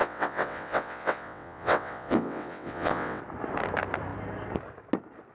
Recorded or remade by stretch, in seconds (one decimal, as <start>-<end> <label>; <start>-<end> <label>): 0.0-3.2 remade; 3.2-5.3 recorded

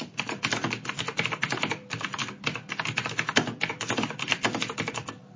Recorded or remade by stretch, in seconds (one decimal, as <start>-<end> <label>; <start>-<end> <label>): 0.0-2.2 remade; 2.2-3.7 recorded; 3.7-5.4 remade

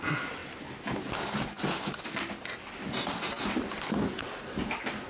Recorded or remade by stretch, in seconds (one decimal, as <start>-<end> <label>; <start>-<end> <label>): 0.0-5.1 recorded

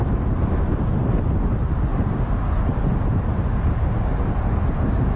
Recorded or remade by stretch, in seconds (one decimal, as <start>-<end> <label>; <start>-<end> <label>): 0.0-1.9 recorded; 1.9-2.7 remade; 2.7-5.2 recorded

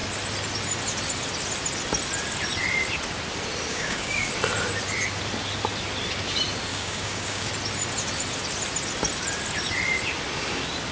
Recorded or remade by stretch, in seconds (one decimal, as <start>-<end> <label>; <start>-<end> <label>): 0.0-3.7 recorded; 3.7-4.3 remade; 4.3-6.7 recorded; 6.7-7.5 remade; 7.5-10.9 recorded

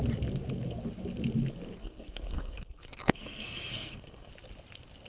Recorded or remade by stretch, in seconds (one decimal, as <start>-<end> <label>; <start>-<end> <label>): 0.0-1.8 recorded; 1.8-4.3 remade; 4.3-5.1 recorded

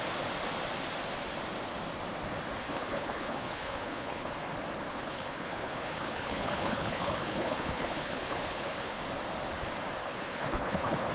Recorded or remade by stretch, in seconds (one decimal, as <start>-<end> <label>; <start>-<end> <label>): 0.0-2.6 recorded; 2.6-4.3 remade; 4.3-4.9 recorded; 4.9-9.0 remade; 9.0-10.0 recorded; 10.0-11.1 remade

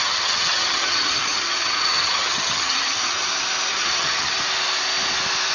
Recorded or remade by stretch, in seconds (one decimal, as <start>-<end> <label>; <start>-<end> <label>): 0.0-3.3 remade; 3.3-3.7 recorded; 3.7-4.3 remade; 4.3-5.5 recorded